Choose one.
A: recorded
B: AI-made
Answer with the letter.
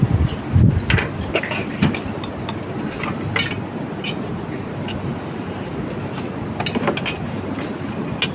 A